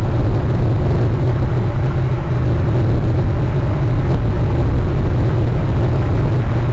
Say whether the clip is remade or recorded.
recorded